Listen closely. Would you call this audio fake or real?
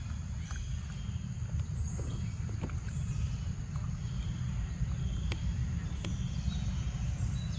real